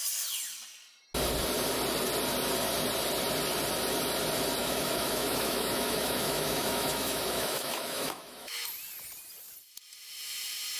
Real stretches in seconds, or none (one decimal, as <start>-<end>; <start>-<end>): 0.0-4.6; 8.6-10.8